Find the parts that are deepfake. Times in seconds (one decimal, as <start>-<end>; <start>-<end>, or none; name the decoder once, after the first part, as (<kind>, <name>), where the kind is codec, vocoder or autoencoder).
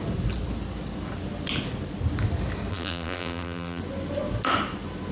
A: 2.7-3.8 (vocoder, BigVGAN v2)